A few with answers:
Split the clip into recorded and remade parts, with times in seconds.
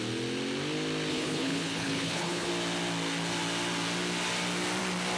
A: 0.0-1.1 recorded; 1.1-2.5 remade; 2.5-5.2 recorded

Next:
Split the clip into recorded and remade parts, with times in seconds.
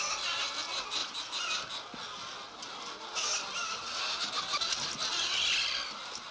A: 0.0-6.3 recorded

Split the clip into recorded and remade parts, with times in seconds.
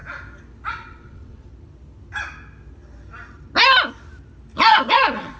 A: 0.0-0.7 recorded; 0.7-1.5 remade; 1.5-4.6 recorded; 4.6-5.4 remade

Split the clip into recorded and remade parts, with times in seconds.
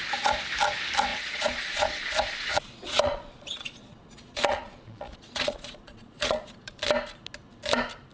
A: 0.0-1.1 recorded; 1.1-2.0 remade; 2.0-2.5 recorded; 2.5-6.8 remade; 6.8-8.1 recorded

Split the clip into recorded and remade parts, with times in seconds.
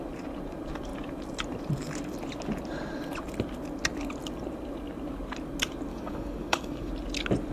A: 0.0-5.9 recorded; 5.9-6.9 remade; 6.9-7.5 recorded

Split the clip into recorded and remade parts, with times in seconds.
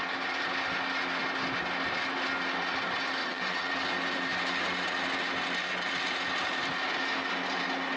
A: 0.0-3.2 recorded; 3.2-3.7 remade; 3.7-8.0 recorded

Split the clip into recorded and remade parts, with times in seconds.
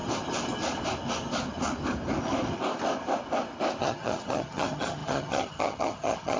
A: 0.0-3.8 recorded; 3.8-6.4 remade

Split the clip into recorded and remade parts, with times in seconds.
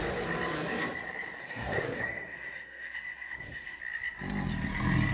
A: 0.0-1.4 recorded; 1.4-3.8 remade; 3.8-5.1 recorded